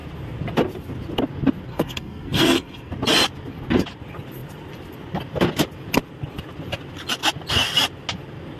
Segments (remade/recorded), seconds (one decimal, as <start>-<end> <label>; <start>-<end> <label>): 0.0-1.7 recorded; 1.7-2.9 remade; 2.9-8.6 recorded